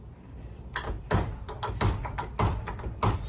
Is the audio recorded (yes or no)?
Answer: yes